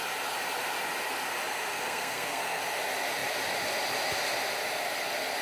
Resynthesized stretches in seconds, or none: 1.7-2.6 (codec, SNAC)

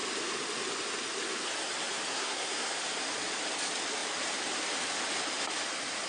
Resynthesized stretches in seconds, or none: 2.1-2.7 (codec, SNAC)

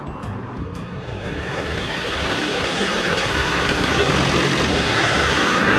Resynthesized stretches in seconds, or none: 0.6-4.1 (codec, SNAC); 4.7-5.8

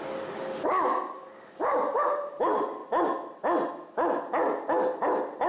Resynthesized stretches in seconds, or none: none